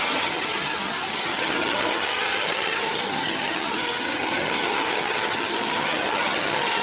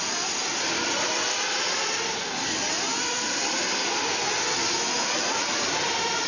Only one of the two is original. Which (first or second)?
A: second